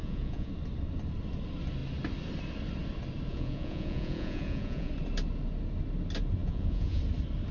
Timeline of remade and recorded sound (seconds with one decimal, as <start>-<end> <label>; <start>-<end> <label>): 0.0-0.5 remade; 0.5-3.3 recorded; 3.3-4.9 remade; 4.9-6.4 recorded; 6.4-7.0 remade; 7.0-7.5 recorded